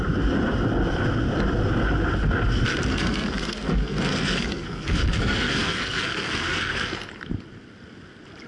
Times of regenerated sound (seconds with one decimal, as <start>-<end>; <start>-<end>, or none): 2.9-7.1